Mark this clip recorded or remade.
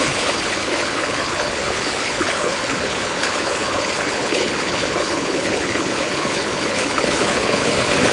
remade